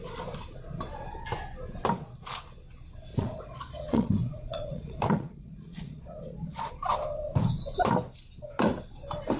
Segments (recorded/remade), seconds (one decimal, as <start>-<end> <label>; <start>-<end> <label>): 0.0-3.1 recorded; 3.1-6.7 remade; 6.7-9.4 recorded